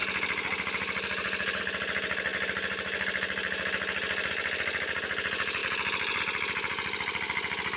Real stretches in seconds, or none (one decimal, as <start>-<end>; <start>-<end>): 0.0-7.8